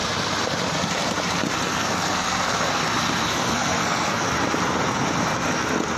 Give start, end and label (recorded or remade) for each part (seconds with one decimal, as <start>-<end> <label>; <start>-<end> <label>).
0.0-1.7 recorded; 1.7-2.8 remade; 2.8-3.2 recorded; 3.2-4.3 remade; 4.3-6.0 recorded